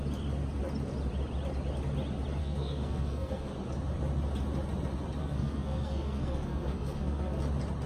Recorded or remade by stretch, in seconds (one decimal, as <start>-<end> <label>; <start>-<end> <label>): 0.0-2.4 recorded; 2.4-3.5 remade; 3.5-5.2 recorded; 5.2-7.4 remade; 7.4-7.9 recorded